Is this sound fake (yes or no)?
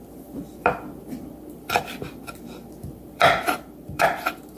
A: yes